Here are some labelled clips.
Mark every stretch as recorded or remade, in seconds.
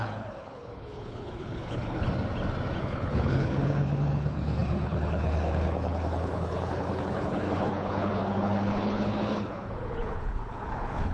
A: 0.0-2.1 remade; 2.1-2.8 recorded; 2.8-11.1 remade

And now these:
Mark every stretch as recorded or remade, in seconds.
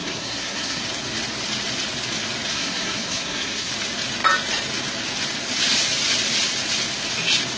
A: 0.0-0.8 remade; 0.8-2.5 recorded; 2.5-3.7 remade; 3.7-7.6 recorded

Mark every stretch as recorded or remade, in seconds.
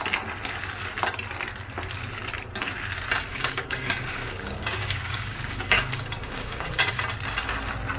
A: 0.0-3.3 recorded; 3.3-7.0 remade; 7.0-8.0 recorded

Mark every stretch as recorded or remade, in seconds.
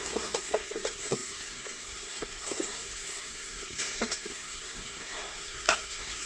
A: 0.0-6.3 remade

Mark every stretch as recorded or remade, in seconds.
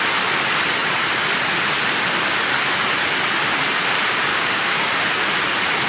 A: 0.0-4.3 recorded; 4.3-5.0 remade; 5.0-5.9 recorded